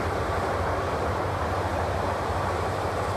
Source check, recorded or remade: remade